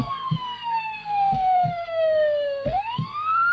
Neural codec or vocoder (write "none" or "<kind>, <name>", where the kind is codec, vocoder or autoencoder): codec, SNAC